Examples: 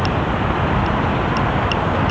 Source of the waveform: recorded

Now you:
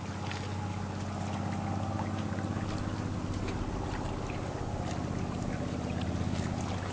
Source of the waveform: recorded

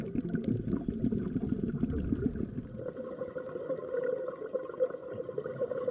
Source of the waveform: recorded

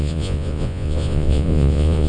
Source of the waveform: remade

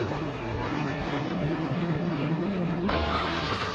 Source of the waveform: remade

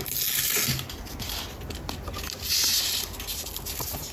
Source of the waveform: recorded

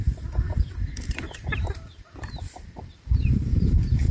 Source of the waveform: remade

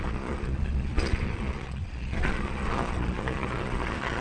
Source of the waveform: remade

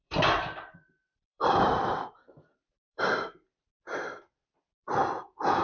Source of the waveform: remade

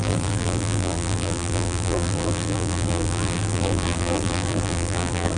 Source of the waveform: remade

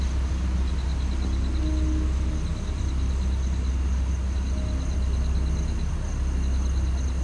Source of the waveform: recorded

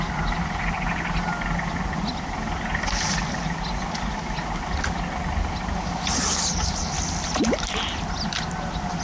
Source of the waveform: recorded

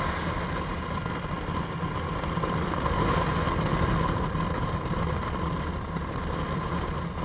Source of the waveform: recorded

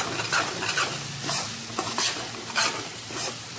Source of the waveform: recorded